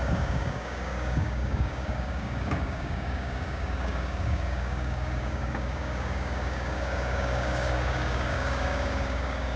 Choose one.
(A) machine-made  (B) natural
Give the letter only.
A